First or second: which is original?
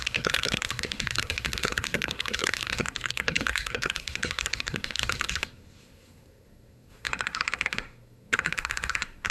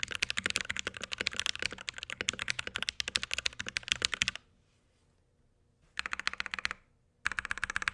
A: second